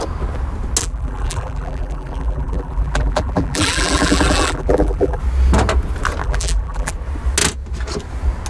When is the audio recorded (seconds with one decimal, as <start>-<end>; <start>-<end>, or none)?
0.0-0.8; 5.2-6.2; 6.9-8.5